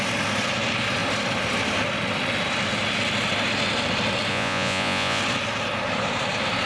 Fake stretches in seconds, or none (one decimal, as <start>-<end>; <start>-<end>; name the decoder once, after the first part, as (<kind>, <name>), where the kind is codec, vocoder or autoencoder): 4.3-5.2 (vocoder, Vocos)